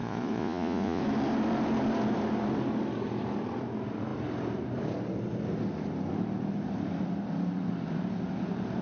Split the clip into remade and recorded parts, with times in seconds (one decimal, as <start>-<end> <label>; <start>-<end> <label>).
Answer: 0.0-1.0 remade; 1.0-8.8 recorded